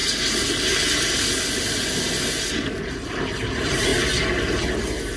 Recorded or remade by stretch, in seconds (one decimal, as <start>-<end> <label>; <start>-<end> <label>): 0.0-3.1 recorded; 3.1-3.9 remade; 3.9-4.8 recorded; 4.8-5.2 remade